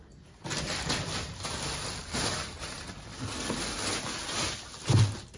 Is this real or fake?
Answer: real